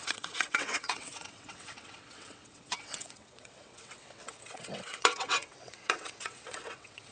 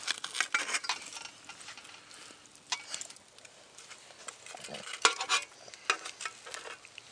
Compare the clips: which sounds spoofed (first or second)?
first